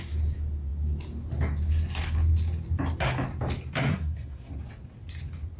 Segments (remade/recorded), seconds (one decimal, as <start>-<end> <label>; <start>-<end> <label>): 0.0-3.9 recorded; 3.9-4.5 remade; 4.5-5.6 recorded